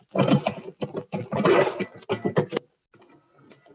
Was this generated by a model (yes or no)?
no